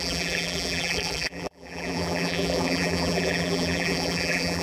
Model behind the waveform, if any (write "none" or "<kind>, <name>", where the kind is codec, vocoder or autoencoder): vocoder, BigVGAN v2